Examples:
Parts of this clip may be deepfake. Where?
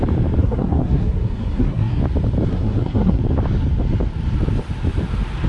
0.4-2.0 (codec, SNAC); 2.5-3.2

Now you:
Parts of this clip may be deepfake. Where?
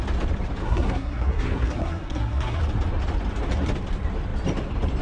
0.6-2.6 (codec, SNAC)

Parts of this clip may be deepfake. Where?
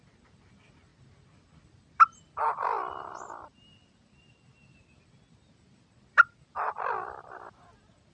none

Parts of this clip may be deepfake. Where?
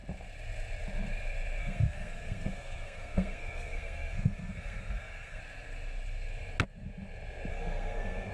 1.6-5.4 (codec, SNAC); 7.5-8.3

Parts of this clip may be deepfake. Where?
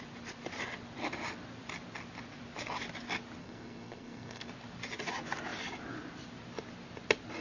3.4-4.5 (codec, SNAC)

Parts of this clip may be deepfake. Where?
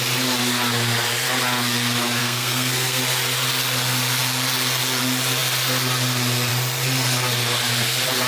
2.2-3.0 (codec, SNAC)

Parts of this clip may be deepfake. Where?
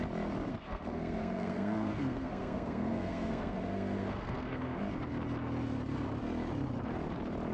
0.5-4.8 (codec, SNAC)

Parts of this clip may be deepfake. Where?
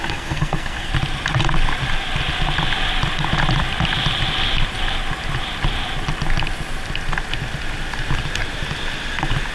0.0-0.9 (codec, SNAC)